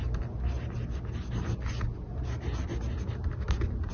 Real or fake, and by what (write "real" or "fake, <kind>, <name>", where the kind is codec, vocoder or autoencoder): real